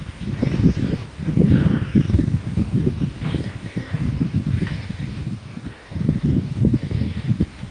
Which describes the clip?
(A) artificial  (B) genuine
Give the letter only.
A